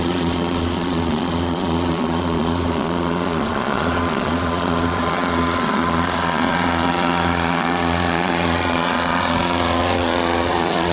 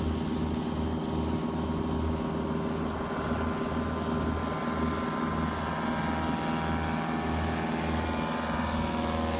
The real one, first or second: second